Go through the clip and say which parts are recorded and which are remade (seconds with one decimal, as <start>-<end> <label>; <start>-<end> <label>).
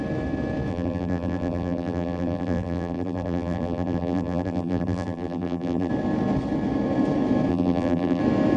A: 0.0-0.7 recorded; 0.7-5.9 remade; 5.9-7.5 recorded; 7.5-8.2 remade; 8.2-8.6 recorded